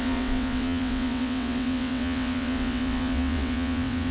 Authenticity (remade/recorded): remade